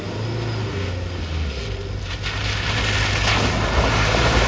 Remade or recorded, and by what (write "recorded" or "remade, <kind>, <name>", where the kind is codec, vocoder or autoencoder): recorded